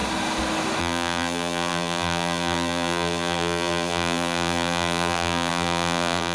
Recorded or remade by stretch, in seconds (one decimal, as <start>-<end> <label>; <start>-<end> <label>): 0.0-0.8 recorded; 0.8-6.3 remade